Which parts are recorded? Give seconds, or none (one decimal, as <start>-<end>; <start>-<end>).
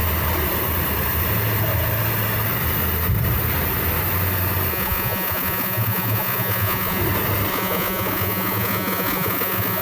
0.0-4.7; 7.0-7.5